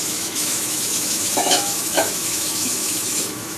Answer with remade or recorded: remade